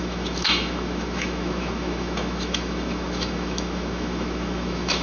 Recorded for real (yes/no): no